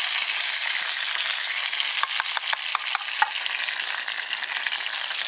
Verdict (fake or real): real